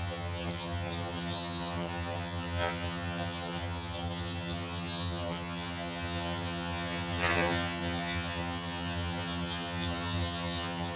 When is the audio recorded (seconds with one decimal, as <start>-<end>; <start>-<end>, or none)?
none